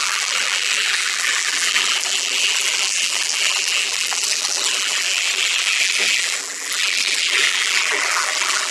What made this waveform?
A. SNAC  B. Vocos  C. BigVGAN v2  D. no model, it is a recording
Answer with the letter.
C